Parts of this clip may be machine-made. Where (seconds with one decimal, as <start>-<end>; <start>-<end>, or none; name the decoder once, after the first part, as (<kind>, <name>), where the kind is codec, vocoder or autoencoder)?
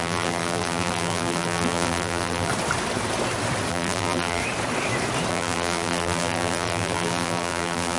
0.0-2.5 (vocoder, BigVGAN v2); 3.7-4.4; 5.3-8.0